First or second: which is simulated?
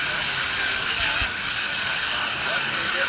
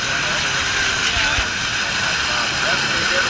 first